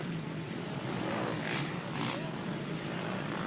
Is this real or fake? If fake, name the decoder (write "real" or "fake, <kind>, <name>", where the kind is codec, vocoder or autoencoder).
fake, vocoder, BigVGAN v2